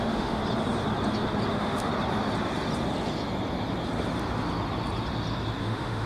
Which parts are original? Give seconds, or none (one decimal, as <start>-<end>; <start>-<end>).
0.4-1.5; 1.9-5.6